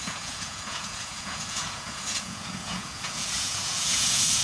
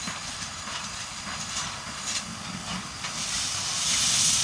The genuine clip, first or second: second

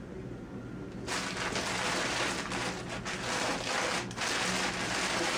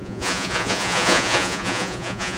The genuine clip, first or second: first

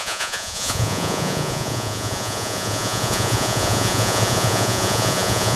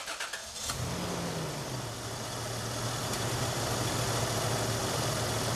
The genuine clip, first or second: second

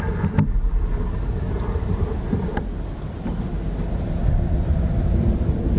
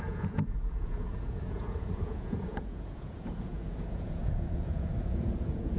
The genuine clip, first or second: first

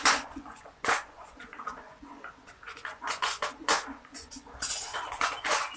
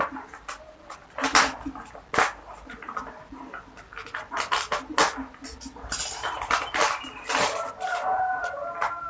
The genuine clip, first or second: second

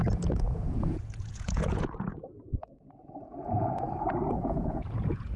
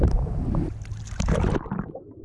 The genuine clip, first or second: second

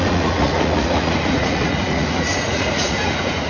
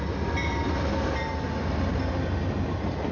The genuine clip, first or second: second